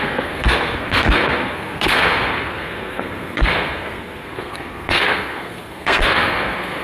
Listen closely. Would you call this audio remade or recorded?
remade